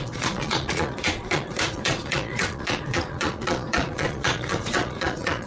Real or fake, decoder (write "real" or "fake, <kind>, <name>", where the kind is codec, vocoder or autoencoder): fake, vocoder, Vocos